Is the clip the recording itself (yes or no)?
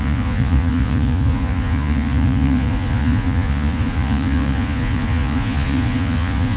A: no